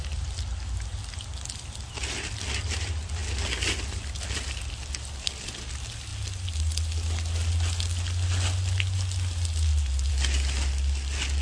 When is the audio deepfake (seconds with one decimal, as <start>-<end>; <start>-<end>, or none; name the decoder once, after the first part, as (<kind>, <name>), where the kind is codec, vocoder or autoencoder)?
none